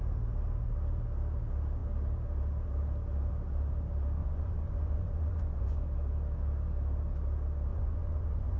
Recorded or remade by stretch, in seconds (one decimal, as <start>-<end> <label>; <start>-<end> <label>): 0.0-4.2 recorded; 4.2-5.8 remade; 5.8-7.7 recorded; 7.7-8.6 remade